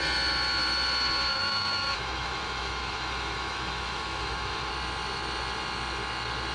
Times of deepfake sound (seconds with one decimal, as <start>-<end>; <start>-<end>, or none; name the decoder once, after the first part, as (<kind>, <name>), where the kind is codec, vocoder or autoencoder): 1.3-4.7 (autoencoder, DAC-VAE)